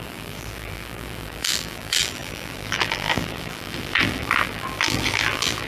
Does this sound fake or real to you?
fake